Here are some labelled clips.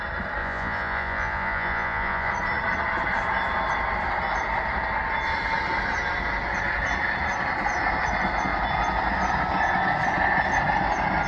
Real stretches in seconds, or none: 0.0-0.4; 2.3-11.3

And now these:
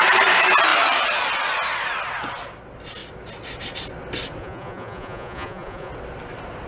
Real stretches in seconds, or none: 0.0-4.4; 5.9-6.7

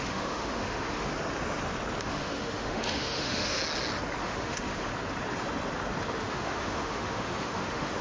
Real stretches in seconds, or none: 1.1-2.0; 3.6-4.2; 4.9-6.2

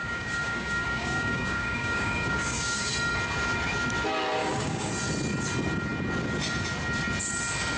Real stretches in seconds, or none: 2.9-4.4; 4.9-7.8

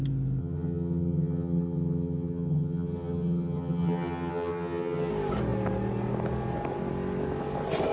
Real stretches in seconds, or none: 0.0-0.4; 5.1-7.9

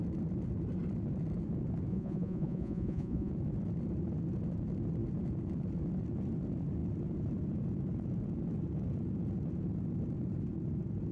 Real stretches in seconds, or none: 0.0-1.9; 3.3-11.1

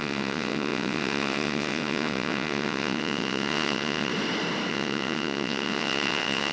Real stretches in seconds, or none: 4.1-4.7

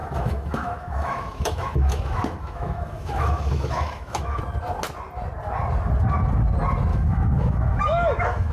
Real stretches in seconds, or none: 4.4-6.9